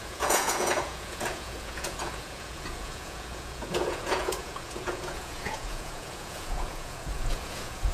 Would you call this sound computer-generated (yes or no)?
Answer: yes